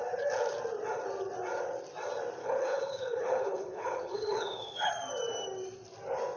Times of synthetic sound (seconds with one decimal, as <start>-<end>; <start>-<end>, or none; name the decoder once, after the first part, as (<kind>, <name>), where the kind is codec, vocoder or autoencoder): 2.4-4.9 (codec, HILCodec)